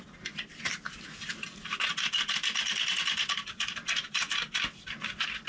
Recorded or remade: recorded